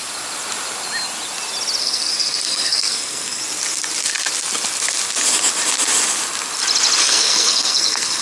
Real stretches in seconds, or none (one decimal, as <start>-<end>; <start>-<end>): 0.0-1.8; 3.4-7.0